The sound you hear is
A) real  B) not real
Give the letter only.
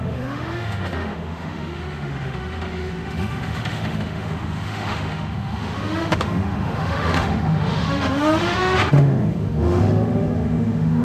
B